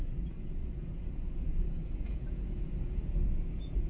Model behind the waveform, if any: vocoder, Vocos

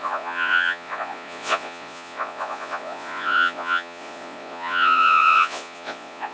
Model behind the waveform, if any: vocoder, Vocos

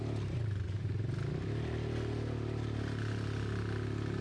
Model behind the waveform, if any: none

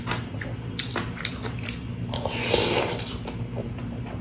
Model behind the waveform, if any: none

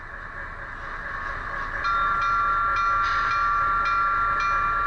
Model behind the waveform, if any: none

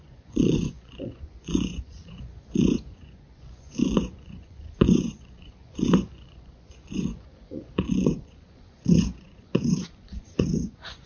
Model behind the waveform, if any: vocoder, Vocos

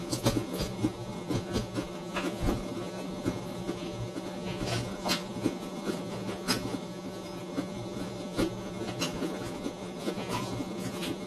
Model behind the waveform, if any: vocoder, Vocos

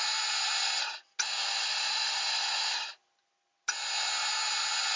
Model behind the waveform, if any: none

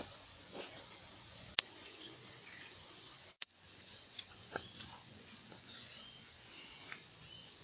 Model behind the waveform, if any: vocoder, Vocos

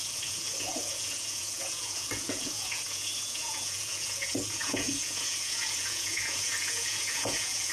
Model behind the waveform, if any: vocoder, Vocos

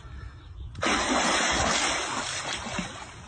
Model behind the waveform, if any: none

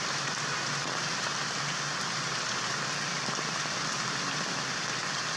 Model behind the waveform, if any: none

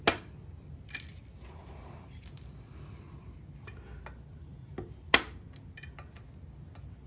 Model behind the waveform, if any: none